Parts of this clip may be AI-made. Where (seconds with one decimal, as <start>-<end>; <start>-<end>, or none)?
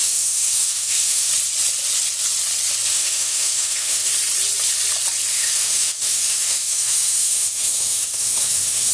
0.0-1.3; 2.9-4.1; 5.3-8.9